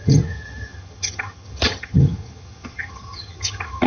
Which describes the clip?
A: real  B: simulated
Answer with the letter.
B